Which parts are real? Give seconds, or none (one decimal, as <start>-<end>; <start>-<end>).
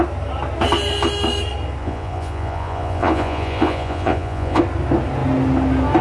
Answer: 0.0-1.8; 4.6-6.0